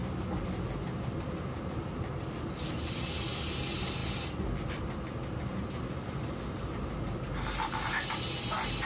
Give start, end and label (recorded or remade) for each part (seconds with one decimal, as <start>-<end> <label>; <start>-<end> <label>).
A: 0.0-8.8 recorded